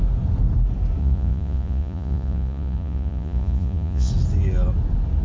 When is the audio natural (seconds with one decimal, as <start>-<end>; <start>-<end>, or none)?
0.0-1.0; 4.1-5.2